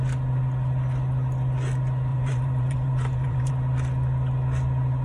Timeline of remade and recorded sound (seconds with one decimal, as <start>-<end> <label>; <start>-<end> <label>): 0.0-2.1 recorded; 2.1-3.5 remade; 3.5-5.0 recorded